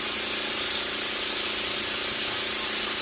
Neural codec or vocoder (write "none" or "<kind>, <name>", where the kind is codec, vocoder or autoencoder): none